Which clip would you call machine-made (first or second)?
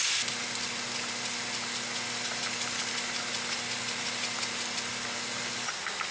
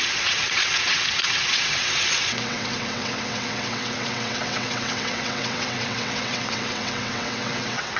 second